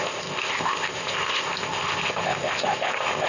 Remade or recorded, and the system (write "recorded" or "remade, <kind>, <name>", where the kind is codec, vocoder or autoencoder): remade, codec, ZipCodec